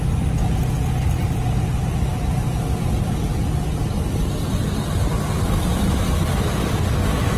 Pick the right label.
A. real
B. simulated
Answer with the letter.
A